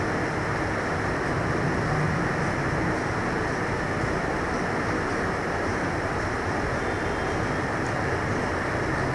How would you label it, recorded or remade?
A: recorded